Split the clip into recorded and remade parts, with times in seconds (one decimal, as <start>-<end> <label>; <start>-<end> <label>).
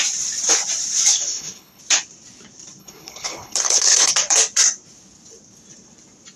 0.0-1.1 recorded; 1.1-1.8 remade; 1.8-2.8 recorded; 2.8-4.1 remade; 4.1-6.4 recorded